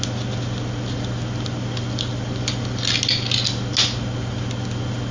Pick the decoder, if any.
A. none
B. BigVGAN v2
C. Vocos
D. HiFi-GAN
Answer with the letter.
A